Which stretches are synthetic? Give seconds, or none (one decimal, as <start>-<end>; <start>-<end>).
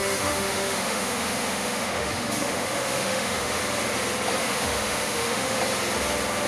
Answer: 0.0-3.6; 4.4-5.6